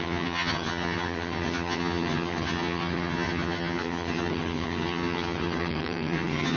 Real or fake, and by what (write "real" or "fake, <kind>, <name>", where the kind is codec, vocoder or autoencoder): fake, vocoder, HiFi-GAN